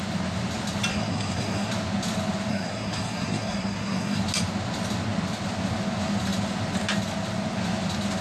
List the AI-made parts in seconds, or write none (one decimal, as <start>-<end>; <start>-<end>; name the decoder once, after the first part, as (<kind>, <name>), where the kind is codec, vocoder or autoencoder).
0.9-1.7 (codec, SNAC); 2.5-4.2